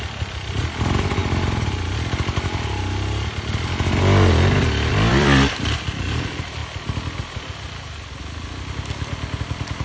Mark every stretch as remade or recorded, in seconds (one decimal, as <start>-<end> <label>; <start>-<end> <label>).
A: 0.0-1.2 remade; 1.2-4.9 recorded; 4.9-6.6 remade; 6.6-9.4 recorded; 9.4-9.8 remade